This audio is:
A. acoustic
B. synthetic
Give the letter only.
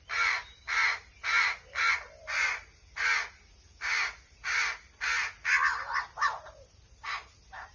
A